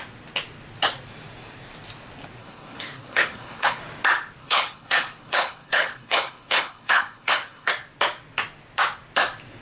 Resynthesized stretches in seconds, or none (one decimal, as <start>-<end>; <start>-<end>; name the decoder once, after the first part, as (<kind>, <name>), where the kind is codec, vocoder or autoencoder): 2.4-3.8 (codec, HILCodec); 4.4-7.7